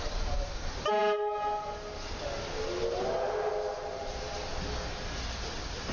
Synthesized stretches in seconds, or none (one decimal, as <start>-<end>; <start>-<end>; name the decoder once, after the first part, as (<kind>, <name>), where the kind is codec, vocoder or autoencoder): none